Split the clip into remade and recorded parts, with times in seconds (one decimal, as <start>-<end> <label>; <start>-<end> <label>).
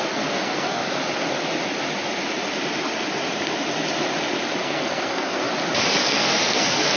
0.0-0.8 remade; 0.8-4.6 recorded; 4.6-5.4 remade; 5.4-5.9 recorded; 5.9-7.0 remade